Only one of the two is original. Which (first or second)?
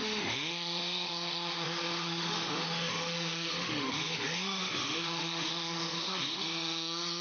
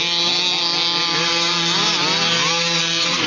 second